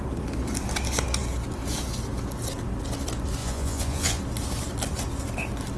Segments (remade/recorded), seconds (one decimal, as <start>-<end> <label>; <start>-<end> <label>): 0.0-3.4 recorded; 3.4-4.2 remade; 4.2-5.8 recorded

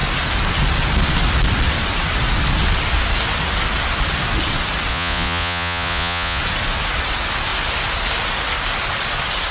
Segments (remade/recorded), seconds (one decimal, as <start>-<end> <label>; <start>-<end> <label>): 0.0-4.9 recorded; 4.9-6.4 remade; 6.4-9.5 recorded